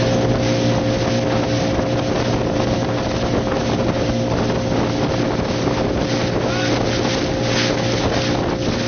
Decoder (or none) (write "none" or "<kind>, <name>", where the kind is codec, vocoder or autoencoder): none